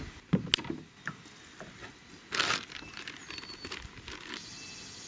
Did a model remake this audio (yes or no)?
no